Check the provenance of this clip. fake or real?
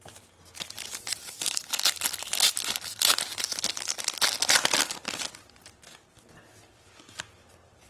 real